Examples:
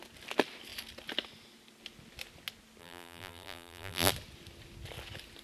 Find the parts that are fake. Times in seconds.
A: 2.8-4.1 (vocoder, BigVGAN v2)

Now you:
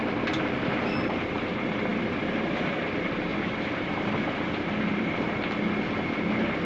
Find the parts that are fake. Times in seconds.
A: 3.3-5.3 (vocoder, BigVGAN v2)

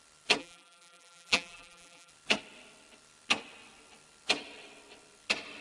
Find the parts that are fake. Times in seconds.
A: 0.4-2.1 (vocoder, BigVGAN v2)

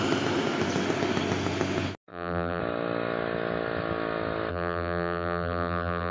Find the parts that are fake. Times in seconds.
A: 2.1-2.6 (vocoder, BigVGAN v2); 4.5-6.1

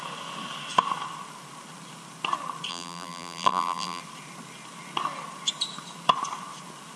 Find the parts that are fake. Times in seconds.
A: 2.7-4.0 (vocoder, BigVGAN v2)